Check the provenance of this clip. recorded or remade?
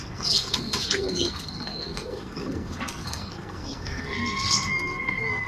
remade